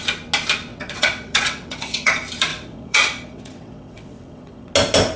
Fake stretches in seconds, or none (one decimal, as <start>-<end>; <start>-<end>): 0.7-2.1; 2.5-4.7